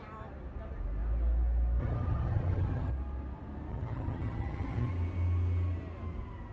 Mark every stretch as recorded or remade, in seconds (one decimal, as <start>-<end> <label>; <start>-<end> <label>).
0.0-1.8 recorded; 1.8-2.9 remade; 2.9-3.7 recorded; 3.7-4.9 remade; 4.9-6.5 recorded